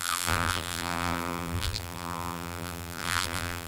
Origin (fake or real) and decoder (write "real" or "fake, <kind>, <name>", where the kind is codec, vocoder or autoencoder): fake, vocoder, BigVGAN v2